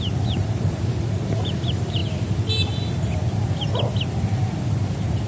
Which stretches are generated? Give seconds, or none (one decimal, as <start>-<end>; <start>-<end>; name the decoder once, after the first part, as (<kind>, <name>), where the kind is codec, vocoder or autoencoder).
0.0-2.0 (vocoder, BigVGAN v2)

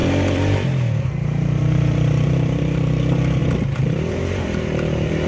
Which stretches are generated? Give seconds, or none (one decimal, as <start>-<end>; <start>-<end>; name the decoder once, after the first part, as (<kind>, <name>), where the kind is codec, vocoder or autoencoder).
0.0-3.0 (vocoder, BigVGAN v2); 3.4-5.3

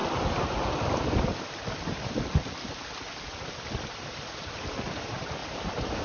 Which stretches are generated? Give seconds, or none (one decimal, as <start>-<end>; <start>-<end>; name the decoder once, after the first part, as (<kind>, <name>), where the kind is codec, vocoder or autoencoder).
0.7-1.3 (vocoder, BigVGAN v2); 4.4-5.4